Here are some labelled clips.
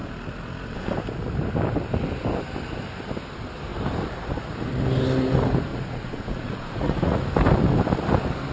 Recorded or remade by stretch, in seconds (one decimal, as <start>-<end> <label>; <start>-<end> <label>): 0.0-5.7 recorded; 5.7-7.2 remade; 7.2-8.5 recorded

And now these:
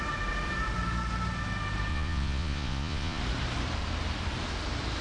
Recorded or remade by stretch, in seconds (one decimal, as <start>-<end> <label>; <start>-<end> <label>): 0.0-1.9 recorded; 1.9-3.2 remade; 3.2-5.0 recorded

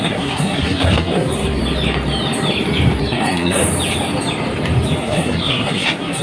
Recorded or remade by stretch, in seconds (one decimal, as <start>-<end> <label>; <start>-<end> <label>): 0.0-1.6 remade; 1.6-3.0 recorded; 3.0-3.6 remade; 3.6-5.0 recorded; 5.0-6.2 remade

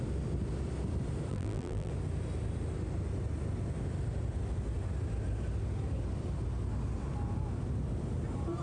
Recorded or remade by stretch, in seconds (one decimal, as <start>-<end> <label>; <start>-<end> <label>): 0.0-1.3 recorded; 1.3-1.9 remade; 1.9-8.6 recorded

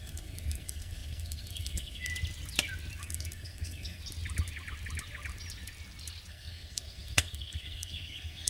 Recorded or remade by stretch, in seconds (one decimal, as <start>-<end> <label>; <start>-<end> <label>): 0.0-2.1 remade; 2.1-3.0 recorded; 3.0-4.0 remade; 4.0-6.3 recorded; 6.3-8.5 remade

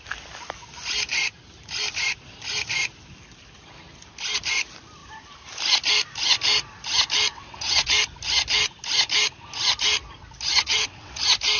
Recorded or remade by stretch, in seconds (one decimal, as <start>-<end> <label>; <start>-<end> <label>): 0.0-7.3 recorded; 7.3-7.9 remade; 7.9-10.5 recorded; 10.5-11.2 remade; 11.2-11.6 recorded

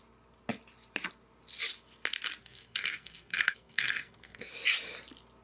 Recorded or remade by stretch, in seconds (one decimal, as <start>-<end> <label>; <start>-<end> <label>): 0.0-2.4 recorded; 2.4-4.5 remade; 4.5-5.4 recorded